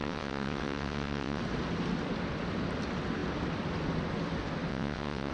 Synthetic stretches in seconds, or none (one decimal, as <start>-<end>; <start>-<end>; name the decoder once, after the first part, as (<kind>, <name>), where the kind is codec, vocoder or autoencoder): 0.0-1.4 (vocoder, WaveNeXt); 4.7-5.3